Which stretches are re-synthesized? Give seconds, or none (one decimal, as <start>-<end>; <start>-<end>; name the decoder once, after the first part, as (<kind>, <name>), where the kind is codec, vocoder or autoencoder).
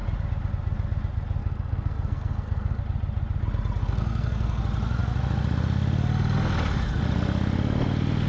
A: 1.4-2.8 (codec, SNAC); 3.8-4.6